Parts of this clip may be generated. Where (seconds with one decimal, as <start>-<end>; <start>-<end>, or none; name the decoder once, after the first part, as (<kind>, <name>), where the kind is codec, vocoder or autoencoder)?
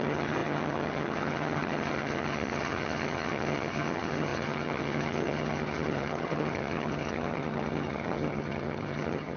0.0-9.4 (vocoder, HiFi-GAN)